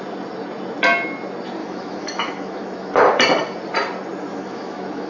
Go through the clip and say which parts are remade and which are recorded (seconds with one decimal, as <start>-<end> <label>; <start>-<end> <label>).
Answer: 0.0-1.6 recorded; 1.6-2.9 remade; 2.9-4.3 recorded; 4.3-5.1 remade

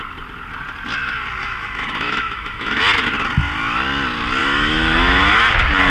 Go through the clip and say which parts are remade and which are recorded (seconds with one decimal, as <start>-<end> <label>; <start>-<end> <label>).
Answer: 0.0-1.4 recorded; 1.4-2.8 remade; 2.8-4.4 recorded; 4.4-5.4 remade; 5.4-5.9 recorded

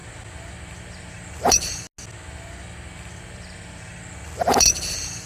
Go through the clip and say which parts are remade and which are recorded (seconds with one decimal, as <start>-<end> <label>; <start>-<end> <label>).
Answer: 0.0-5.3 recorded

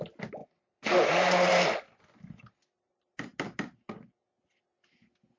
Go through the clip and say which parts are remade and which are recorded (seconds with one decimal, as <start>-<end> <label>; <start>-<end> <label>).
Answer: 0.0-5.4 recorded